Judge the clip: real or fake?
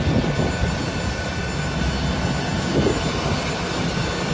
real